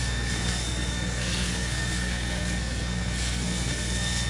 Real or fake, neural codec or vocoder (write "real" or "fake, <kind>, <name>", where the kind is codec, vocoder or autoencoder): fake, codec, SNAC